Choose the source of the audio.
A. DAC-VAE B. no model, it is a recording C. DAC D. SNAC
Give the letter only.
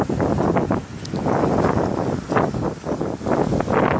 B